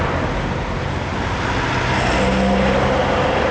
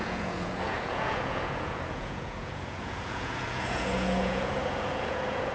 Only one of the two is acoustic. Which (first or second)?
first